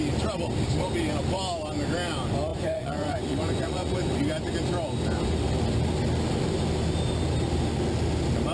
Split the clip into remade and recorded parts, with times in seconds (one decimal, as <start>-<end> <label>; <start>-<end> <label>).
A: 0.0-2.5 recorded; 2.5-4.1 remade; 4.1-8.5 recorded